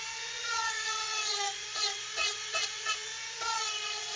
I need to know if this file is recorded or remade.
remade